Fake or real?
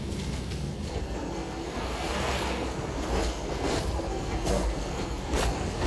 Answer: fake